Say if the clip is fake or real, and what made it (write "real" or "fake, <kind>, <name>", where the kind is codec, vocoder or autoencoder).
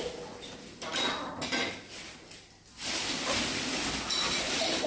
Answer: real